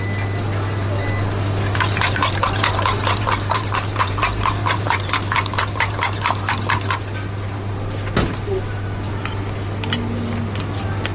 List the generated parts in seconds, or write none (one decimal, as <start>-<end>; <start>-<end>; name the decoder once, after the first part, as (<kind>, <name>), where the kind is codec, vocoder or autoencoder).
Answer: 1.9-6.5 (vocoder, BigVGAN v2)